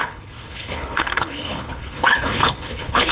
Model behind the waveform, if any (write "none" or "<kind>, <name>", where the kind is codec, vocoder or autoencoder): codec, HILCodec